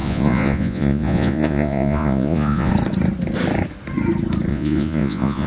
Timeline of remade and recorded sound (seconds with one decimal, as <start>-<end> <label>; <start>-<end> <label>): 0.0-2.7 remade; 2.7-4.5 recorded; 4.5-5.5 remade